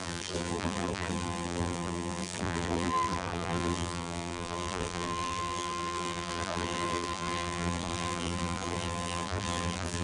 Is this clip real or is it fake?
fake